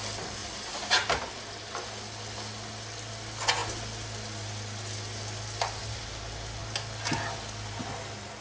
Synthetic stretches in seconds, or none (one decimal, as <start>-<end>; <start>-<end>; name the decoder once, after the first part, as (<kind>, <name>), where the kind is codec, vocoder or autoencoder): 0.4-1.2 (vocoder, BigVGAN v2)